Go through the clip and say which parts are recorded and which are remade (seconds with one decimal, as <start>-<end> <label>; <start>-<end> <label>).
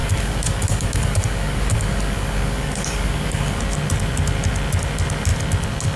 0.0-3.6 remade; 3.6-6.0 recorded